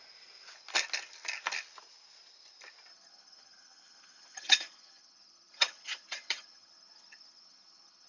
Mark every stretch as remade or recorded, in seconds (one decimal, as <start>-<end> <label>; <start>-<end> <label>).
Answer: 0.0-2.9 recorded; 2.9-8.1 remade